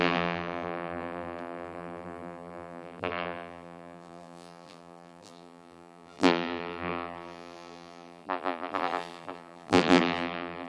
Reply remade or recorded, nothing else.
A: remade